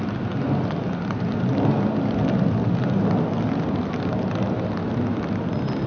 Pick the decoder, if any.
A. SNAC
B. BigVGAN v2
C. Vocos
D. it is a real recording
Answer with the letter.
D